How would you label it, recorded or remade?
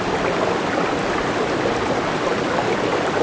recorded